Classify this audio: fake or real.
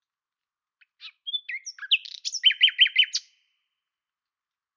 real